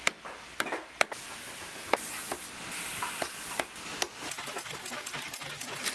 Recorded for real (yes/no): yes